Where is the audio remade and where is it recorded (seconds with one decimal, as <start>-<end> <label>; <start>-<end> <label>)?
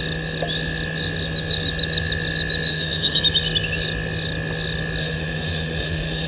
0.0-2.7 recorded; 2.7-3.2 remade; 3.2-5.0 recorded; 5.0-6.3 remade